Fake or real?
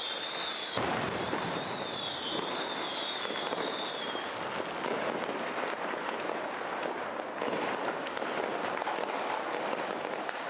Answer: real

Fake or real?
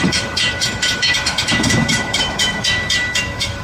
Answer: fake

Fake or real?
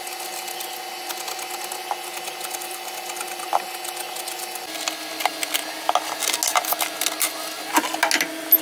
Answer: real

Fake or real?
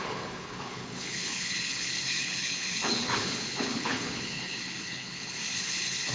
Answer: fake